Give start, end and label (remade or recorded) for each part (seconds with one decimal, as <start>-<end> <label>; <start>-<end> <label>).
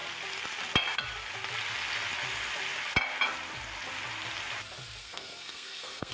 0.0-5.0 recorded; 5.0-6.1 remade